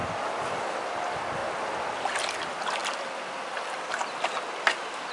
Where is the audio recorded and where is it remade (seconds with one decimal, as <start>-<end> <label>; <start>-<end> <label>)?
0.0-5.1 recorded

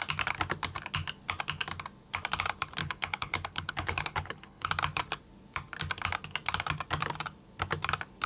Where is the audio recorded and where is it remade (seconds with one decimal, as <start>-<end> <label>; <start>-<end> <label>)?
0.0-2.8 recorded; 2.8-4.7 remade; 4.7-8.3 recorded